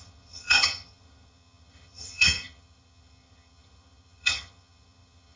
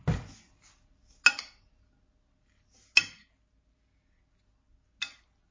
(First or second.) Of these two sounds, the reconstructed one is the first